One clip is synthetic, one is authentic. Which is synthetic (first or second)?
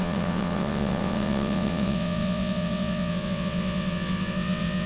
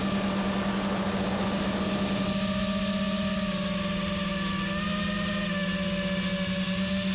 first